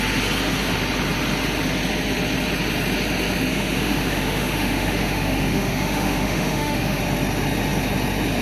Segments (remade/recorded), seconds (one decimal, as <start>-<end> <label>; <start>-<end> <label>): 0.0-3.5 recorded; 3.5-7.0 remade; 7.0-8.4 recorded